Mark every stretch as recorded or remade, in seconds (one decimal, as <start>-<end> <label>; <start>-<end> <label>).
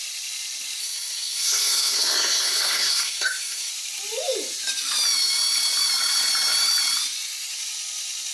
0.0-0.8 recorded; 0.8-3.7 remade; 3.7-8.3 recorded